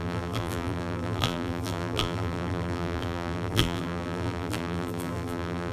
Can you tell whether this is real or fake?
fake